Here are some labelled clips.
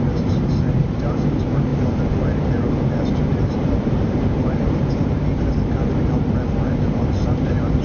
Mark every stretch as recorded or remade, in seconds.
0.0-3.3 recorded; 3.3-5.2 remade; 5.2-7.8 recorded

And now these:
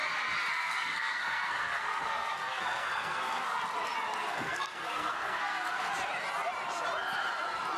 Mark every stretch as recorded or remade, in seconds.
0.0-0.5 recorded; 0.5-3.6 remade; 3.6-4.2 recorded; 4.2-5.9 remade; 5.9-7.8 recorded